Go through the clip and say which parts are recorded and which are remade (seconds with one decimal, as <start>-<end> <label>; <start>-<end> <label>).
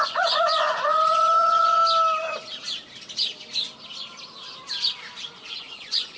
0.0-1.8 remade; 1.8-5.5 recorded; 5.5-6.2 remade